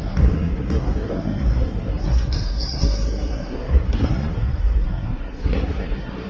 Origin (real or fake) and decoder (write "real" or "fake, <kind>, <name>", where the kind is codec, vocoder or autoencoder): fake, codec, SNAC